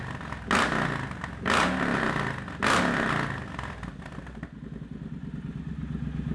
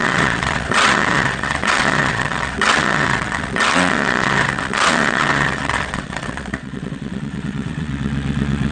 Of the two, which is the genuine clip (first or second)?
first